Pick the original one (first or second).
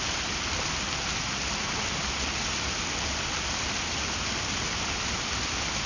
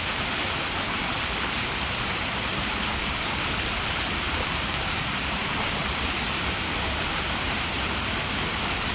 first